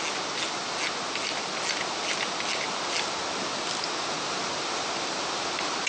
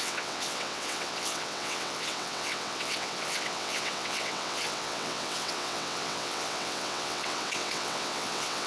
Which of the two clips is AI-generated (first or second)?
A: second